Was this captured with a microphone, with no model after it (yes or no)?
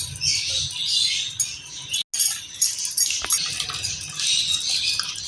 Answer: yes